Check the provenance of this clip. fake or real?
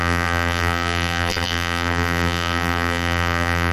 fake